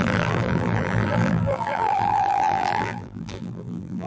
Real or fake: fake